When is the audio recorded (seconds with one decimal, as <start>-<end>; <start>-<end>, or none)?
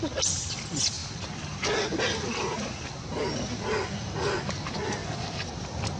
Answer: 0.0-6.0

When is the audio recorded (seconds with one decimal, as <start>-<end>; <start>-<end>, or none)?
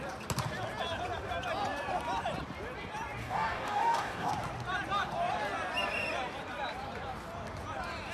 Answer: 0.0-3.2; 4.3-8.1